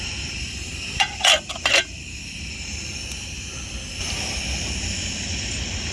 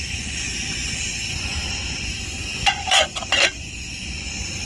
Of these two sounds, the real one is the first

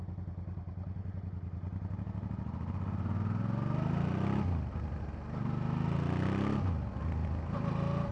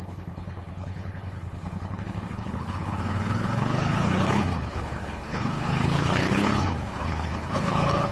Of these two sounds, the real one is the first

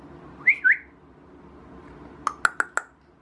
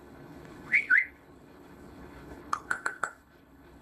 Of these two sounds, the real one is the first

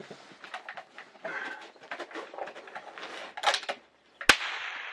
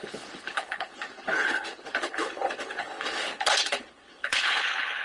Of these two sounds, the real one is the first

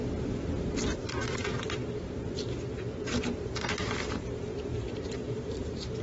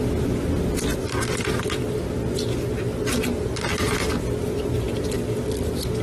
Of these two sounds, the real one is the second